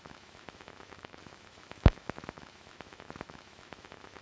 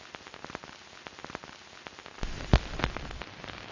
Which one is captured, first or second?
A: second